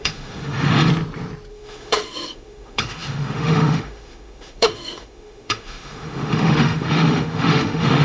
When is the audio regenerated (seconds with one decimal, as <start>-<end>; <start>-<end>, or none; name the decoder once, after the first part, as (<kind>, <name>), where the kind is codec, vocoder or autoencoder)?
0.0-0.9 (autoencoder, DAC-VAE); 1.5-8.0